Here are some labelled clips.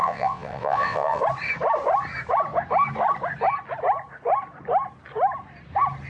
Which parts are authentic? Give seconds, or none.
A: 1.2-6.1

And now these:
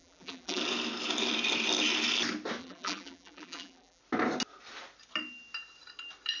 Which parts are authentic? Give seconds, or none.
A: 0.6-2.6; 4.0-6.4

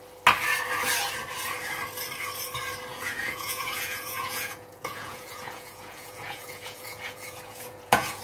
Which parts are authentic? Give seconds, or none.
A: 0.0-2.9